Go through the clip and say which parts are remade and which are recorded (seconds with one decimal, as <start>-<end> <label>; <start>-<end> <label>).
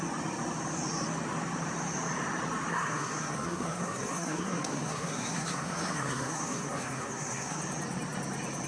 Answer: 0.0-2.7 recorded; 2.7-7.6 remade; 7.6-8.7 recorded